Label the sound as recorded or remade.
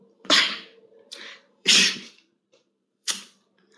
remade